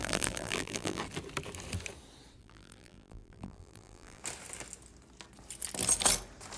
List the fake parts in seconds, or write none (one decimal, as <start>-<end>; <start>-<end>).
0.0-1.0; 2.4-4.2